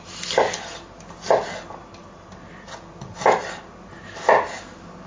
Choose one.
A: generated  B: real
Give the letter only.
B